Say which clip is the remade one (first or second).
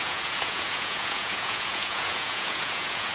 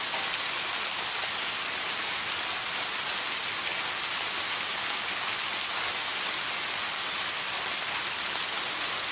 first